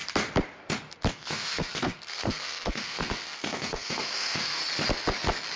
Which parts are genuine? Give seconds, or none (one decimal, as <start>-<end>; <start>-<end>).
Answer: 0.0-1.1; 4.6-5.6